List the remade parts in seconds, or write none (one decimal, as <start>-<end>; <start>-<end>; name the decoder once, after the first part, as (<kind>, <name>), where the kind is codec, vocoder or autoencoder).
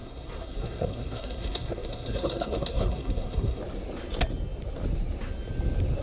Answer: 0.0-3.6 (codec, SNAC)